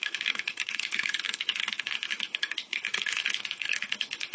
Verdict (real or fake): fake